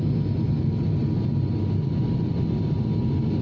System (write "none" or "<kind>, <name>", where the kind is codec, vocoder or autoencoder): none